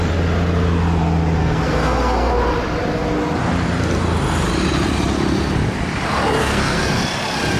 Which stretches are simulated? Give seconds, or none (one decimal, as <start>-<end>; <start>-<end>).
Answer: 1.4-2.3; 6.4-7.0